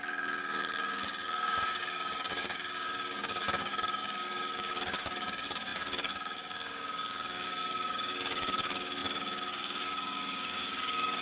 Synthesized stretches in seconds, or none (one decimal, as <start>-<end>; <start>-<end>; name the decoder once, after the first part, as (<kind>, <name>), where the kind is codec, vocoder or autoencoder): 0.0-11.2 (codec, DAC)